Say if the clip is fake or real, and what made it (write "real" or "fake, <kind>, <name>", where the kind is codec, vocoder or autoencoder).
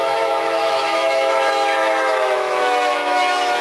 fake, autoencoder, DAC-VAE